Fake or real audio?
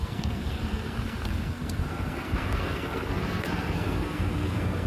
fake